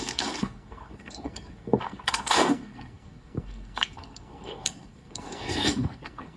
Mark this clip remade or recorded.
remade